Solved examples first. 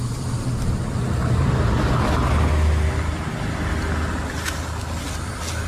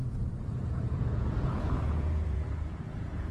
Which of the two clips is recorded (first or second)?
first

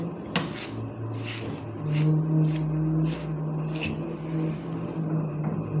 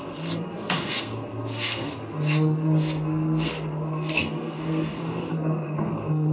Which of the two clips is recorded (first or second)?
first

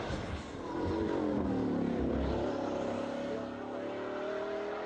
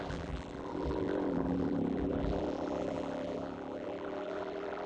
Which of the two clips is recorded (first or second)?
first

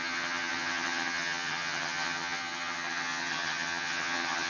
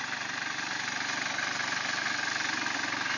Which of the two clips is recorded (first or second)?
second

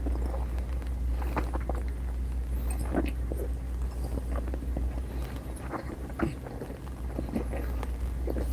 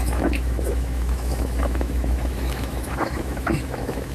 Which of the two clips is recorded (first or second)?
first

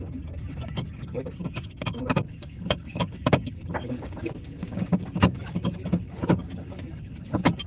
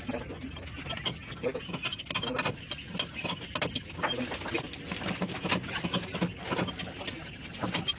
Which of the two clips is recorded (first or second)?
second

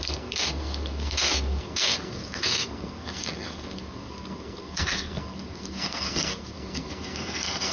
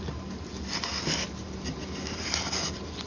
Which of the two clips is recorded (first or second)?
second